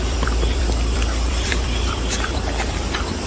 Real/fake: fake